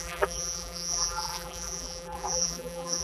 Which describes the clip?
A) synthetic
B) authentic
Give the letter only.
A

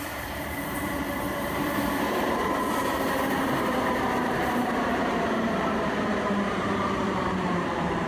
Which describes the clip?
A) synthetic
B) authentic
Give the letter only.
A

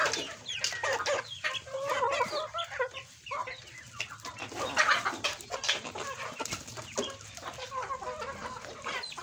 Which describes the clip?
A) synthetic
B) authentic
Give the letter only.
B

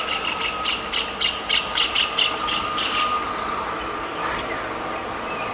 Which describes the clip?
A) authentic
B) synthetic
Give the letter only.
A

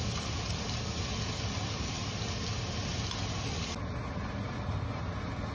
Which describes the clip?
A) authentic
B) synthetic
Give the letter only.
A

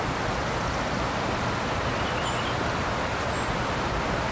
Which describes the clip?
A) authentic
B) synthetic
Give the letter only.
A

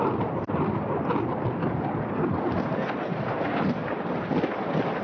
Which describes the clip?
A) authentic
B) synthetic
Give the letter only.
A